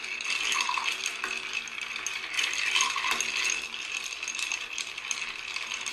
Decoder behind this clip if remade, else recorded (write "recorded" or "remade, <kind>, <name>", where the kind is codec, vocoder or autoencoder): recorded